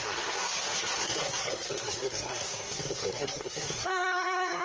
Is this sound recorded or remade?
remade